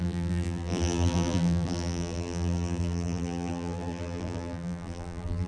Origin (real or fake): fake